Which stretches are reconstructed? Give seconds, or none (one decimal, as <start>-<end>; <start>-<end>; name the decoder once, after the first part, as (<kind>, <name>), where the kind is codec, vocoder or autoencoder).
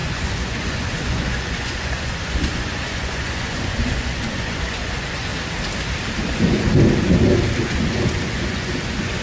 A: 0.0-5.3 (vocoder, Vocos); 6.2-6.7; 7.6-9.2